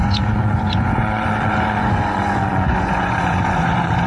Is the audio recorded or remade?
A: remade